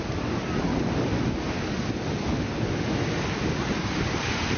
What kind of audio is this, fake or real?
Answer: real